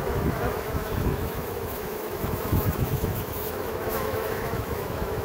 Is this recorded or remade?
remade